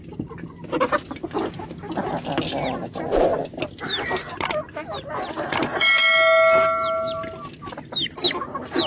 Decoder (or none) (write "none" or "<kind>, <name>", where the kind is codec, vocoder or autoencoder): none